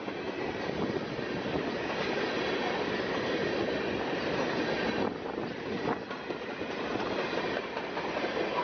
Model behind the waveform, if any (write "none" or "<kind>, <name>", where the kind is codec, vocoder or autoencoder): none